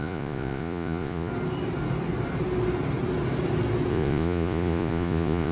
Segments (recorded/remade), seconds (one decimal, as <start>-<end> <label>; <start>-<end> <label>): 0.0-1.3 remade; 1.3-3.9 recorded; 3.9-5.5 remade